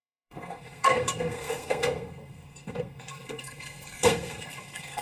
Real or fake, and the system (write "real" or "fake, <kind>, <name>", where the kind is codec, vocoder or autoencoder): fake, codec, SNAC